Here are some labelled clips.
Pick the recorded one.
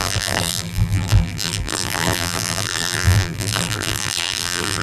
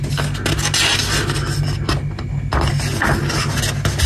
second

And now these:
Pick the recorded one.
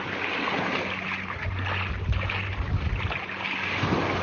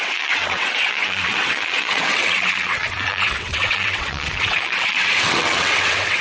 first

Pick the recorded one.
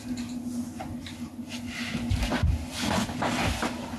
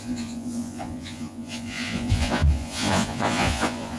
first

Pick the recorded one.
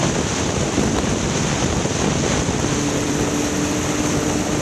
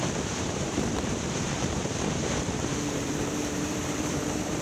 first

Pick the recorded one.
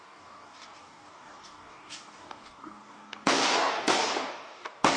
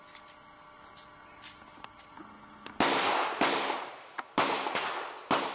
second